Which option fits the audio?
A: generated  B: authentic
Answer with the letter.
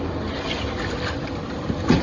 B